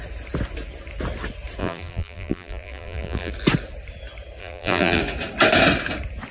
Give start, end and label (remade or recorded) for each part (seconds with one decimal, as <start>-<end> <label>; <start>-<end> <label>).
0.0-1.6 recorded; 1.6-3.3 remade; 3.3-4.4 recorded; 4.4-5.0 remade; 5.0-6.3 recorded